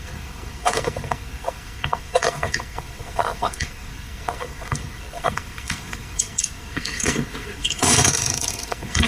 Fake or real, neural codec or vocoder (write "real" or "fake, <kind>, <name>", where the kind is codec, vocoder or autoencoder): fake, codec, SNAC